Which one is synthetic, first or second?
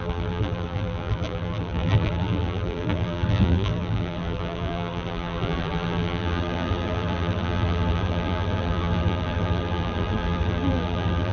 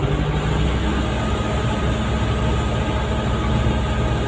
first